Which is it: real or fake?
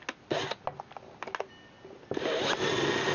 real